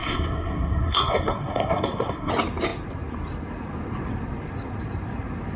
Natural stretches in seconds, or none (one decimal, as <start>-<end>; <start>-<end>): 2.3-5.6